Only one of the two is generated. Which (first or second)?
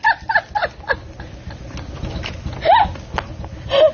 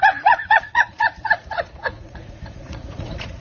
second